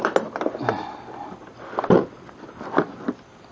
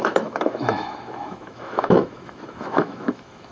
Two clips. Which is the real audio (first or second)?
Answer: first